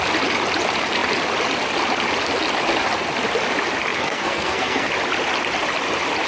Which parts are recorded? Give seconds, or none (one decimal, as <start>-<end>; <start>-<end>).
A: 0.0-3.9; 4.9-6.3